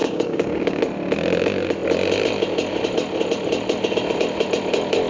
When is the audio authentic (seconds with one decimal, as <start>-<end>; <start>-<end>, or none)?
0.8-5.1